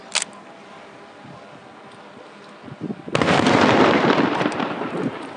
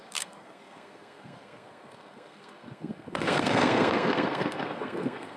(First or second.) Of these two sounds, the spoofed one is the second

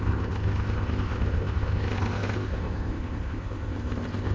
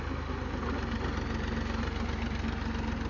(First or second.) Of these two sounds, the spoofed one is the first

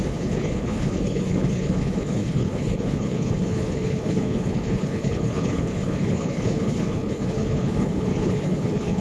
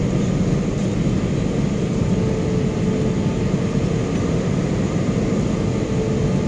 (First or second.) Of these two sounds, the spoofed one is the first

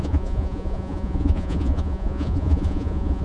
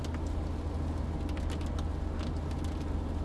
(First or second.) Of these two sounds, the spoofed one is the first